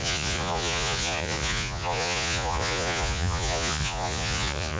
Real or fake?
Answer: fake